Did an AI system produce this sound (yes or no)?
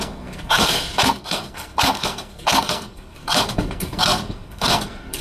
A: yes